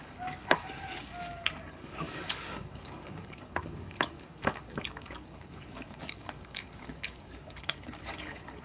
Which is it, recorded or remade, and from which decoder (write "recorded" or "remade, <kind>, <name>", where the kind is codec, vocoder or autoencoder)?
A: remade, codec, DAC